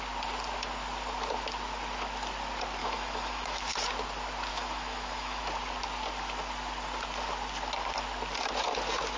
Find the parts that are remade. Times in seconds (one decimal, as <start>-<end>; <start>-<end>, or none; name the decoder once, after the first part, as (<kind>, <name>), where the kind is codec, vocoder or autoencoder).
2.8-3.7 (autoencoder, DAC-VAE); 4.5-5.4